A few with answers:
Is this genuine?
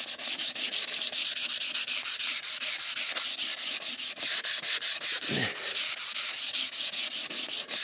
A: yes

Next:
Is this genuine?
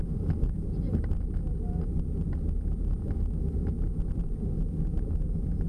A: yes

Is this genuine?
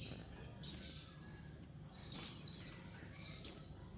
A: yes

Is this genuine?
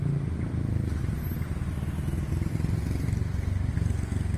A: yes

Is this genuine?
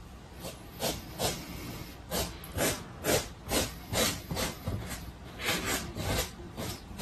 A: yes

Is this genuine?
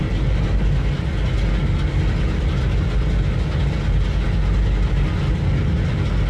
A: yes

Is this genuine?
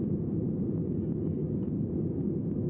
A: yes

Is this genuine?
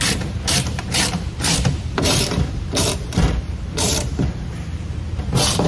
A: no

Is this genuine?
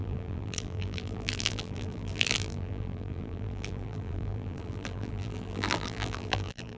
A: no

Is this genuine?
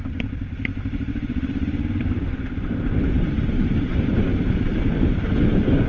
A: no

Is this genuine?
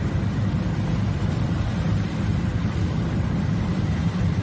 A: no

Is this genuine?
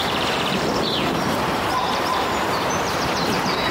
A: no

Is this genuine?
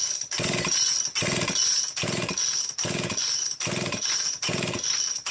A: yes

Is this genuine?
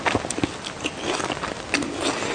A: yes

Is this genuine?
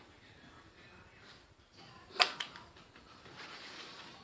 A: no